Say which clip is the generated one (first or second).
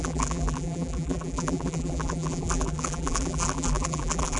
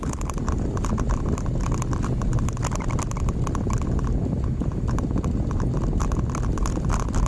first